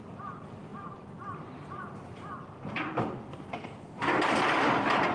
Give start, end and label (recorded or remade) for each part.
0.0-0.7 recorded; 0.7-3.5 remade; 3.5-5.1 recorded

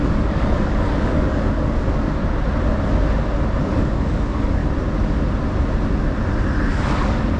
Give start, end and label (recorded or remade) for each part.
0.0-2.2 remade; 2.2-3.6 recorded; 3.6-4.6 remade; 4.6-6.7 recorded; 6.7-7.4 remade

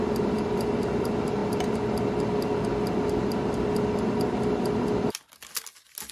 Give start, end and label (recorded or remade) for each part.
0.0-6.1 recorded

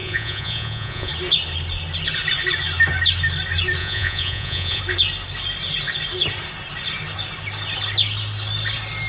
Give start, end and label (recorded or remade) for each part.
0.0-1.1 remade; 1.1-3.8 recorded; 3.8-4.8 remade; 4.8-9.1 recorded

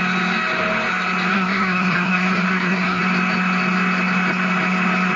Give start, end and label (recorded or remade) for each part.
0.0-1.3 recorded; 1.3-3.0 remade; 3.0-5.2 recorded

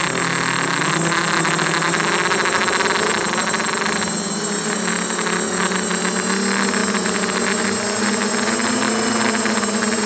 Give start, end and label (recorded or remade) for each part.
0.0-3.1 recorded; 3.1-4.9 remade; 4.9-10.1 recorded

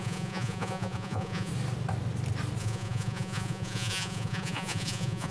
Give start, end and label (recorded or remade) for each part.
0.0-1.5 remade; 1.5-2.6 recorded; 2.6-5.3 remade

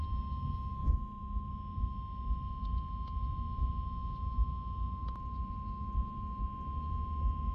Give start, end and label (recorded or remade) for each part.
0.0-0.8 recorded; 0.8-1.5 remade; 1.5-7.5 recorded